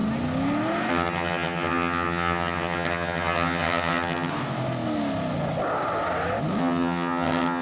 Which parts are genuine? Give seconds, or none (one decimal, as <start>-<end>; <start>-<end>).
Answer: 0.0-0.9; 4.3-6.6